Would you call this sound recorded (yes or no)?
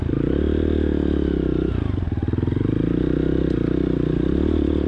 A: yes